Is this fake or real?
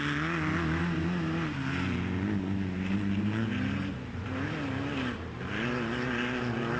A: real